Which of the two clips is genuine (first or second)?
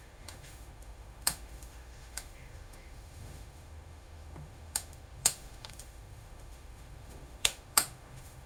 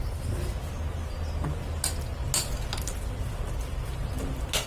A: second